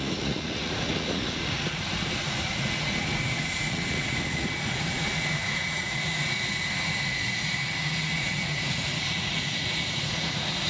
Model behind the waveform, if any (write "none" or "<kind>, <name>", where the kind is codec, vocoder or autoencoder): vocoder, Vocos